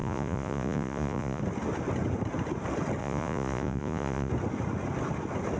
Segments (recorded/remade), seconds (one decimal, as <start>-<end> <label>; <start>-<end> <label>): 0.0-1.4 remade; 1.4-3.0 recorded; 3.0-4.3 remade; 4.3-5.6 recorded